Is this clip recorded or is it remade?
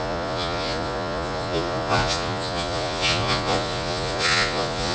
remade